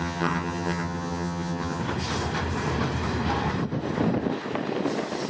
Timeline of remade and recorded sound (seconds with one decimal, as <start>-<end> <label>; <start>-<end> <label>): 0.0-1.8 remade; 1.8-5.3 recorded